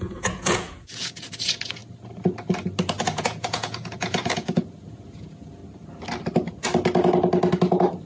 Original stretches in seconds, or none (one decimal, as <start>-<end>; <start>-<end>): 1.8-2.9; 5.6-8.1